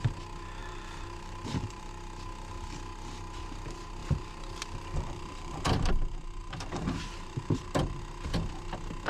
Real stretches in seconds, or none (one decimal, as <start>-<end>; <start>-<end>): 0.0-0.6; 1.9-4.0; 5.9-6.4; 8.0-9.1